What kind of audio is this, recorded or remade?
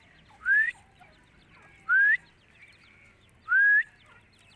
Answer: recorded